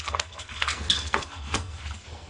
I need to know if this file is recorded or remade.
remade